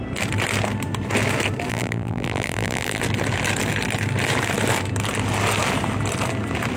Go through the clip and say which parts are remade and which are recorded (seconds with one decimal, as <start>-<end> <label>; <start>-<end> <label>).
0.0-1.7 recorded; 1.7-3.0 remade; 3.0-6.8 recorded